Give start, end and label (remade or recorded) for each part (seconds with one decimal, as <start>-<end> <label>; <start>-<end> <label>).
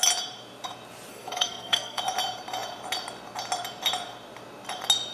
0.0-1.1 recorded; 1.1-2.0 remade; 2.0-5.1 recorded